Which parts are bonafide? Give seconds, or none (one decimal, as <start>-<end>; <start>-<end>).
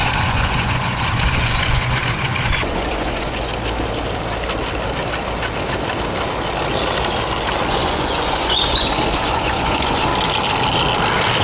3.5-7.7; 10.1-11.4